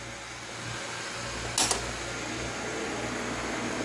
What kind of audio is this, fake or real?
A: real